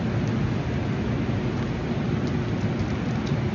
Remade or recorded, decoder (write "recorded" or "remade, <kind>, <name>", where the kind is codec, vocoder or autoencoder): recorded